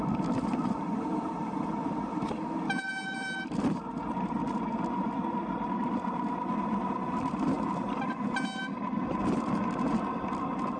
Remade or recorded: recorded